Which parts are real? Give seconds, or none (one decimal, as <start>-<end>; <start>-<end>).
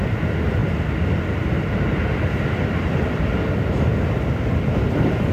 0.0-5.3